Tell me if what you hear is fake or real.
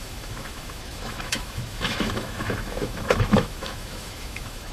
fake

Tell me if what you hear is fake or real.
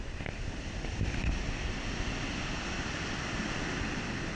real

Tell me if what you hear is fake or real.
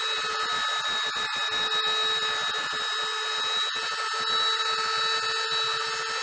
real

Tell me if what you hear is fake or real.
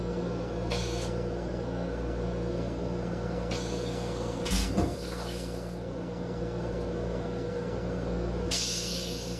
fake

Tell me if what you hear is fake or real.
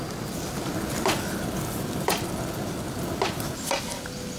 real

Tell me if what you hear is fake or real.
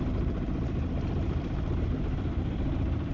fake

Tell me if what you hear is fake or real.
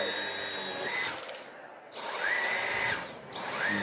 real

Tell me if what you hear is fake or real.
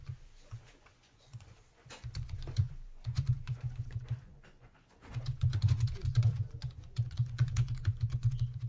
fake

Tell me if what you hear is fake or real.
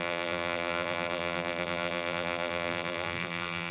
fake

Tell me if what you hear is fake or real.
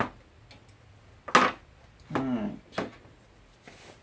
real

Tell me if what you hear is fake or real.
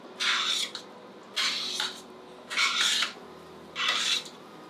real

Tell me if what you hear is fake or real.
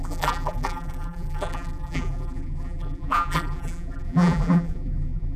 fake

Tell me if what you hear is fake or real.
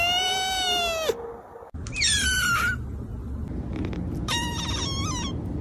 real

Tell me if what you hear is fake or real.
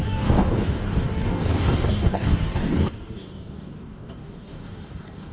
fake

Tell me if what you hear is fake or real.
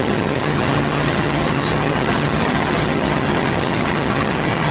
fake